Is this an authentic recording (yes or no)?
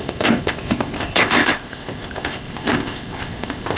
no